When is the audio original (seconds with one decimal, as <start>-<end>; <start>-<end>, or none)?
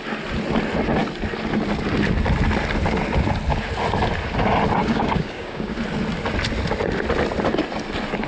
0.0-4.8; 5.8-8.3